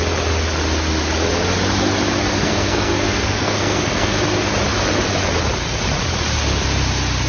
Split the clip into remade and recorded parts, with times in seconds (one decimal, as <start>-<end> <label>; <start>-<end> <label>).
0.0-2.4 recorded; 2.4-4.2 remade; 4.2-7.3 recorded

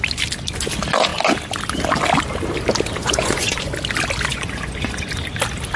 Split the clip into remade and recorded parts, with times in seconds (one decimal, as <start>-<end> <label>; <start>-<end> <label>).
0.0-3.0 recorded; 3.0-3.7 remade; 3.7-4.3 recorded; 4.3-5.1 remade; 5.1-5.8 recorded